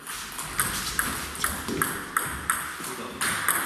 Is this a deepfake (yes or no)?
no